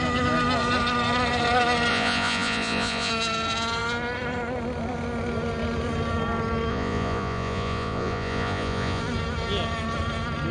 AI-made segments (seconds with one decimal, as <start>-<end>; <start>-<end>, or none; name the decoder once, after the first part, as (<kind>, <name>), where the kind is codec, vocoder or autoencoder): 1.9-3.1 (vocoder, Vocos); 6.7-9.0